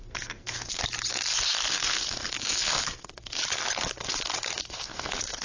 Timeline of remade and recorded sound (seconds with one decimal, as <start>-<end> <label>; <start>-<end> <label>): 0.0-0.8 remade; 0.8-1.7 recorded; 1.7-3.4 remade; 3.4-4.6 recorded; 4.6-5.4 remade

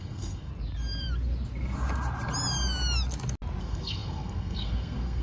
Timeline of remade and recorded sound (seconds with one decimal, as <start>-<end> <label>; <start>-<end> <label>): 0.0-0.5 remade; 0.5-3.6 recorded; 3.6-5.2 remade

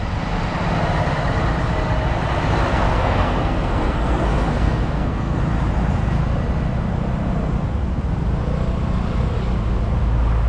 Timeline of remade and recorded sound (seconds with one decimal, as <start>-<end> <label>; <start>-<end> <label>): 0.0-2.7 recorded; 2.7-5.4 remade; 5.4-10.5 recorded

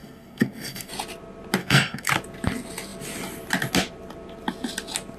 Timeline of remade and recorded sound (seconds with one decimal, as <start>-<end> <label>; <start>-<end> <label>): 0.0-0.9 remade; 0.9-1.6 recorded; 1.6-2.1 remade; 2.1-5.2 recorded

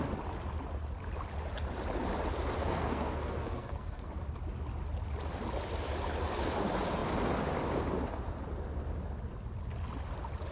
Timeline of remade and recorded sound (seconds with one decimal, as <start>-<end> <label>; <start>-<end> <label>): 0.0-2.6 recorded; 2.6-4.1 remade; 4.1-10.5 recorded

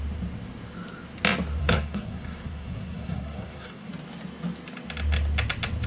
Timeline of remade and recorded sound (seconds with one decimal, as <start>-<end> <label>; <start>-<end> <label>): 0.0-1.6 recorded; 1.6-3.9 remade; 3.9-5.9 recorded